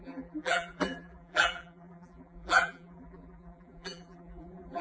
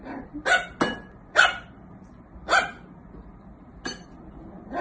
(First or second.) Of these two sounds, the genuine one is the second